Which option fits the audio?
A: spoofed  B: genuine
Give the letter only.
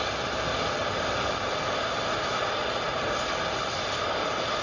B